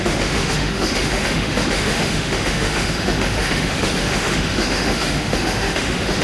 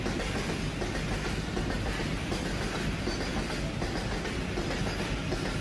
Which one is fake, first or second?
first